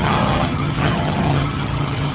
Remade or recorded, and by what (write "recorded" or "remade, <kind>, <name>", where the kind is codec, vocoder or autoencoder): remade, vocoder, HiFi-GAN